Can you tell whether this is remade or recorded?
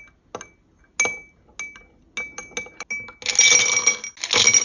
recorded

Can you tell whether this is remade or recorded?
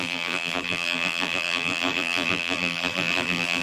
remade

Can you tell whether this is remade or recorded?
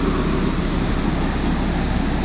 recorded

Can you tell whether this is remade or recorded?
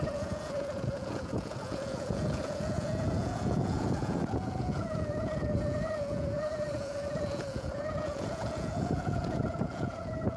remade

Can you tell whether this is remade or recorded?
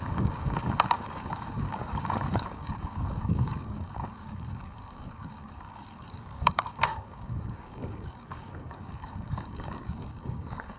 remade